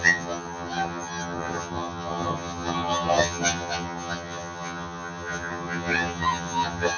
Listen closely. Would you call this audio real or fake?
fake